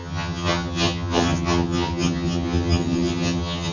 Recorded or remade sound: remade